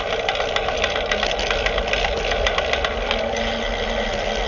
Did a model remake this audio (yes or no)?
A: no